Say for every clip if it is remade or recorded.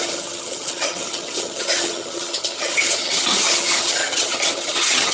remade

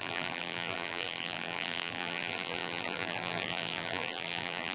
remade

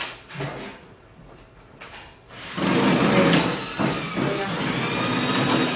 recorded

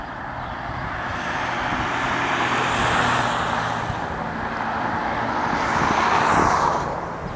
recorded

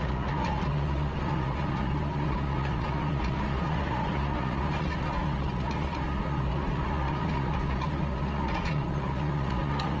remade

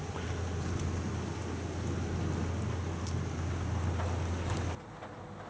recorded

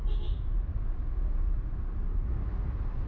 recorded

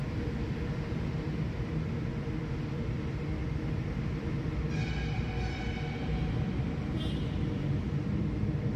remade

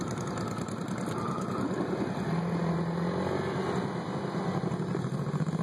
recorded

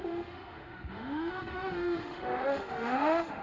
remade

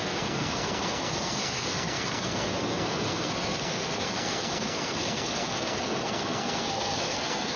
remade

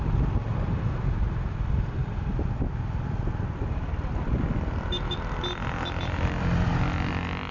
recorded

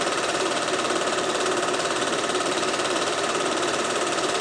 remade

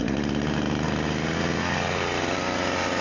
recorded